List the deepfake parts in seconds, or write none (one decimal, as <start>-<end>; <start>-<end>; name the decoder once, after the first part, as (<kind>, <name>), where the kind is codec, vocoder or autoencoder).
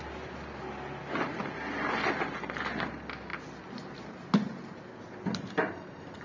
none